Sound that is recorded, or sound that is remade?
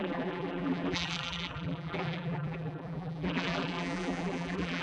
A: remade